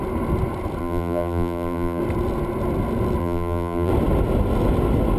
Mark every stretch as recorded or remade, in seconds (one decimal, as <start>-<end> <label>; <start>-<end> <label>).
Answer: 0.0-0.8 recorded; 0.8-2.0 remade; 2.0-3.2 recorded; 3.2-3.9 remade; 3.9-5.2 recorded